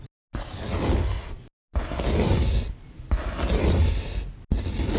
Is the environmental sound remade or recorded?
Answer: recorded